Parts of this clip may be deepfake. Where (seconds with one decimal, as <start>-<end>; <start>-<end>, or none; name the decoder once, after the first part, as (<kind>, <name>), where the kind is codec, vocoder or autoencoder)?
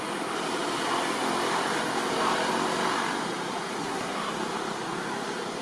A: 3.8-4.3 (codec, SNAC)